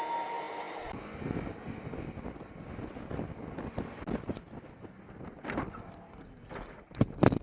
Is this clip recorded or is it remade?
recorded